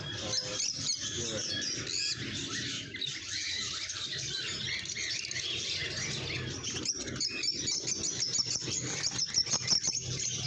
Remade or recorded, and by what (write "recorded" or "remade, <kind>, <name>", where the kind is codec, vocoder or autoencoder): recorded